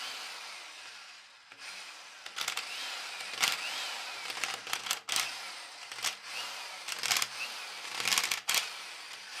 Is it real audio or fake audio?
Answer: real